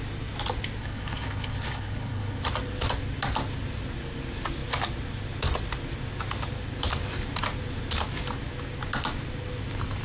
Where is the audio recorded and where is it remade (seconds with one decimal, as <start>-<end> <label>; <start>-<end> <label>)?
0.0-0.8 recorded; 0.8-2.4 remade; 2.4-10.0 recorded